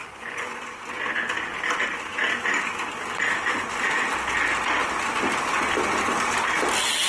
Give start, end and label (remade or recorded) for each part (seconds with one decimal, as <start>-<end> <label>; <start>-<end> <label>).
0.0-0.6 remade; 0.6-7.1 recorded